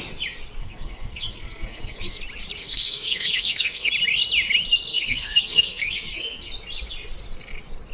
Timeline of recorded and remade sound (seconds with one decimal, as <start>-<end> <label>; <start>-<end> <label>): 0.0-0.6 recorded; 0.6-2.2 remade; 2.2-2.6 recorded; 2.6-3.9 remade; 3.9-4.9 recorded; 4.9-6.5 remade; 6.5-7.9 recorded